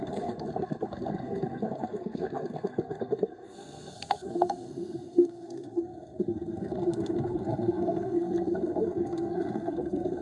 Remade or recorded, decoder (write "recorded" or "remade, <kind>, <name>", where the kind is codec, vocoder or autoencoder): remade, codec, SNAC